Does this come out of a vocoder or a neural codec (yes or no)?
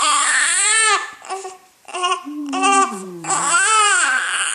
yes